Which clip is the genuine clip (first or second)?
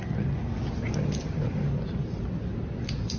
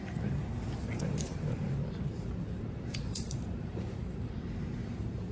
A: first